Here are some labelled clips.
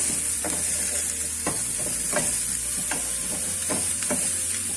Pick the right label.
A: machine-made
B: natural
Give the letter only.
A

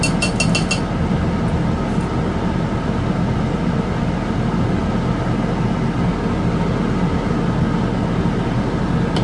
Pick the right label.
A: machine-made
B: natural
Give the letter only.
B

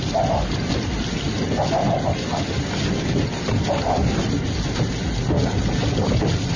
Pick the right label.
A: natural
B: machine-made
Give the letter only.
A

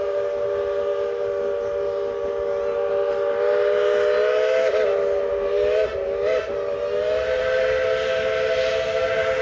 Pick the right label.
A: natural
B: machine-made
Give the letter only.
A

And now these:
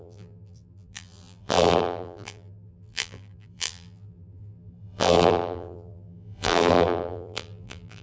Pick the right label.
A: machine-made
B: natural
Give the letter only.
A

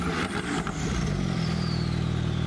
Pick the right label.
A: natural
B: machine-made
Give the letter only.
B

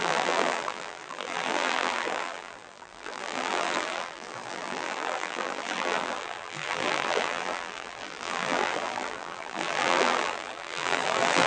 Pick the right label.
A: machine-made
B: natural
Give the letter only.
A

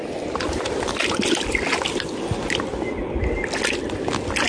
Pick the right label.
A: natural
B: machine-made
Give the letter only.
A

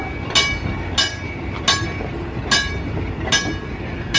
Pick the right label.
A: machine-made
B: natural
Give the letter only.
B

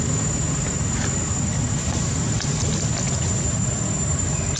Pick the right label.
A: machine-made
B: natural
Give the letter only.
B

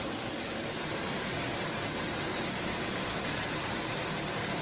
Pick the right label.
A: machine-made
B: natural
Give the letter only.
A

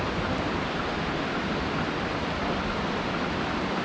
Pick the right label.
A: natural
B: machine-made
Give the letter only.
A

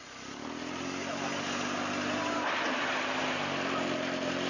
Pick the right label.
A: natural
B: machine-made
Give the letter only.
A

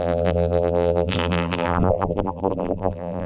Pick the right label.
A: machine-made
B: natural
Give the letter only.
A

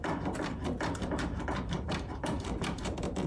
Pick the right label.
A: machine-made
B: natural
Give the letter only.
A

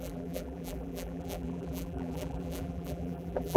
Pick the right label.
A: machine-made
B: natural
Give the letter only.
A